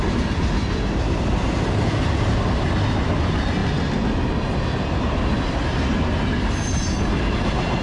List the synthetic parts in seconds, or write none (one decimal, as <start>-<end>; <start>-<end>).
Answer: none